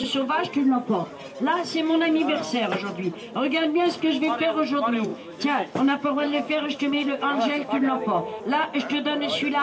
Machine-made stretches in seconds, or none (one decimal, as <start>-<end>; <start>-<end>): 5.1-8.4